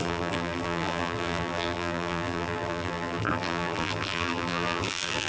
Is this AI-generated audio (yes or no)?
yes